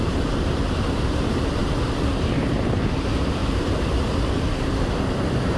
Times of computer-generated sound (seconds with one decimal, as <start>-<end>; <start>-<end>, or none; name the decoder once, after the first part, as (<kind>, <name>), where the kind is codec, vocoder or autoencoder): 0.0-5.6 (vocoder, BigVGAN v2)

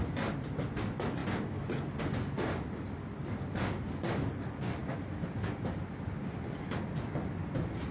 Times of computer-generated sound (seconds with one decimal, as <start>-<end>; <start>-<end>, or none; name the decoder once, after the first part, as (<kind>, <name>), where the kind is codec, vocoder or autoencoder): none